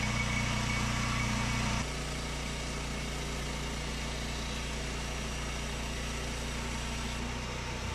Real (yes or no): yes